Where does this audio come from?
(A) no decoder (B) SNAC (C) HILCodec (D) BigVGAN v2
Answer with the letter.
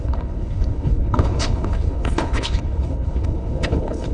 C